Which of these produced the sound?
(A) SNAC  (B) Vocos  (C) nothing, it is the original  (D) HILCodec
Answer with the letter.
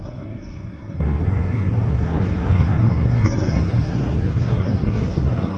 A